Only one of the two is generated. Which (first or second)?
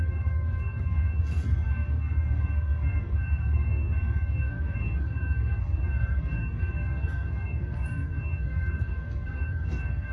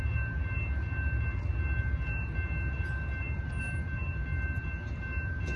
first